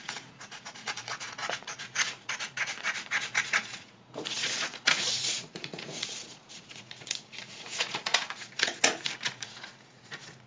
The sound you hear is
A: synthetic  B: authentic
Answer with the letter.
A